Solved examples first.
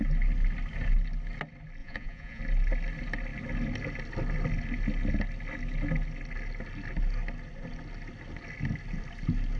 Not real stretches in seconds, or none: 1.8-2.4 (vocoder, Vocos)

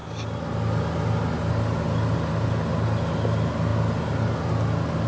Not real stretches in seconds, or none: none